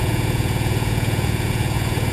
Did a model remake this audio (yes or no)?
yes